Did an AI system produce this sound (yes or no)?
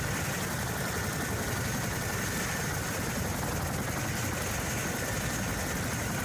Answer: no